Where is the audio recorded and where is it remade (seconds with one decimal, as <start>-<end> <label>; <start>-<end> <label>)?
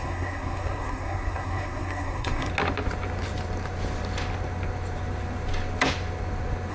0.0-2.5 remade; 2.5-6.7 recorded